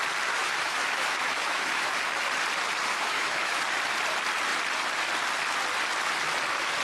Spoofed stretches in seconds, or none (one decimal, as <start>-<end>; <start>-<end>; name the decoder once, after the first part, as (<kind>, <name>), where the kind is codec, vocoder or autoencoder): 0.4-1.9 (autoencoder, DAC-VAE); 2.9-3.6